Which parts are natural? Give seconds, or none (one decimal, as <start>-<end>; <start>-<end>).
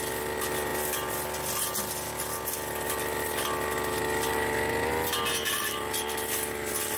0.0-7.0